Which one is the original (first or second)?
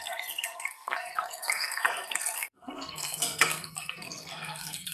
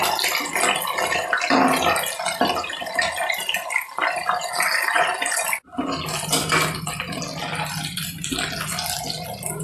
second